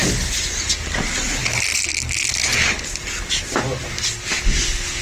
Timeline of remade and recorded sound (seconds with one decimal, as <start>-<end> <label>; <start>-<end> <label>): 0.0-5.0 recorded